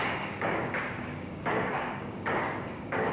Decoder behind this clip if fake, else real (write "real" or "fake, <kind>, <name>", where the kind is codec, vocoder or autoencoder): fake, codec, DAC